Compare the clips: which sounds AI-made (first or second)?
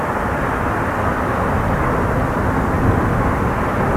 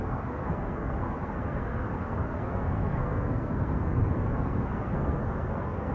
second